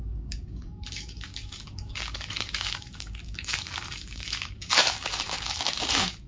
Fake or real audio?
fake